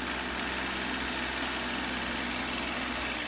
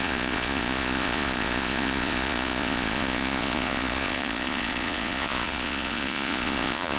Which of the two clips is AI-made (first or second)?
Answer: second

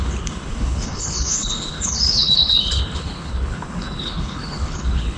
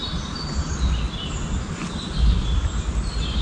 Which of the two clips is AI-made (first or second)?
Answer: first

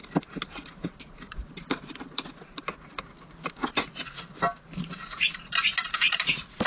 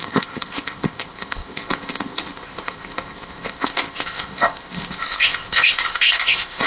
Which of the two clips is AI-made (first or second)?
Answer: second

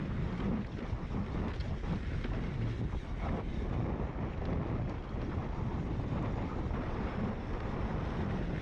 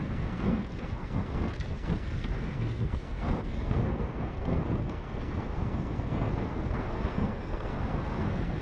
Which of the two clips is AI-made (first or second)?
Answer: second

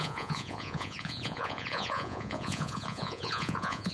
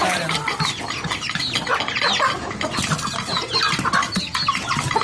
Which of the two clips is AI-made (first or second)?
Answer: first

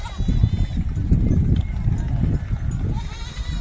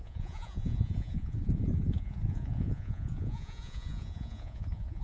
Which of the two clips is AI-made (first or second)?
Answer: second